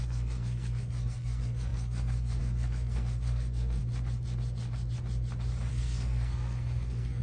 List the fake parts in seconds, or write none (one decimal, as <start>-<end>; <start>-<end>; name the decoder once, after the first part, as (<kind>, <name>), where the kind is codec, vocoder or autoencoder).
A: 0.0-3.8 (codec, SNAC); 5.7-7.2